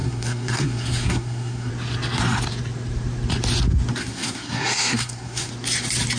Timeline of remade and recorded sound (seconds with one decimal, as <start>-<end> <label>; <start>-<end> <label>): 0.0-1.7 remade; 1.7-4.0 recorded; 4.0-5.5 remade; 5.5-6.2 recorded